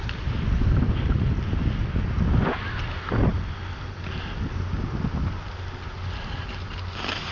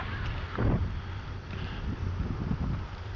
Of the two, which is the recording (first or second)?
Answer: first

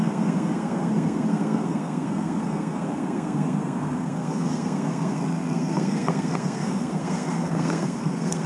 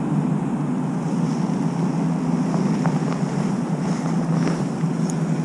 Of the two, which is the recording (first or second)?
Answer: second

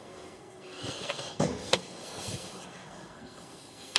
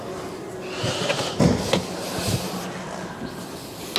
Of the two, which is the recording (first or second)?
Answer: second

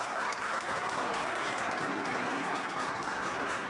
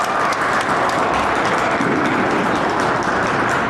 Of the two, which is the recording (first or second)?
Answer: second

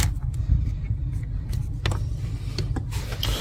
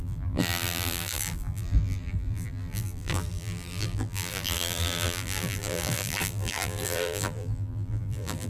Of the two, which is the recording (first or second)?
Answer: first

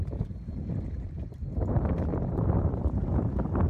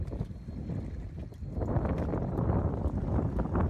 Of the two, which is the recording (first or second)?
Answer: second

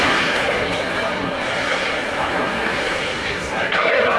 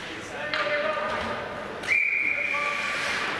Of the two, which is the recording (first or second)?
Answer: second